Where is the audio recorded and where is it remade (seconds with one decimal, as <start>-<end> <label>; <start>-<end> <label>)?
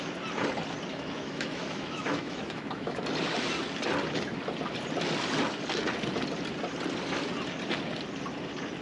0.0-0.9 recorded; 0.9-3.0 remade; 3.0-8.8 recorded